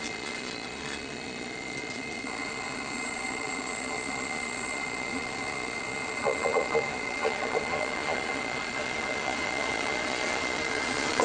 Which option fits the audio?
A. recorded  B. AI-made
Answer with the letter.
B